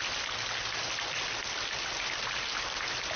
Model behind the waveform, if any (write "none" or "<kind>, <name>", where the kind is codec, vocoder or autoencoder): none